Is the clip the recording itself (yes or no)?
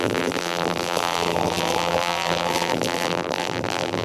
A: no